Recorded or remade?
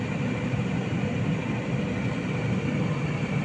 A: recorded